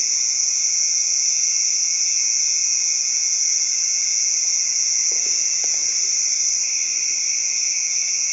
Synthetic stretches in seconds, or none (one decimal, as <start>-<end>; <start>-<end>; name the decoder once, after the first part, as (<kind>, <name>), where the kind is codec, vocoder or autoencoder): 0.0-5.8 (vocoder, Vocos); 7.4-8.3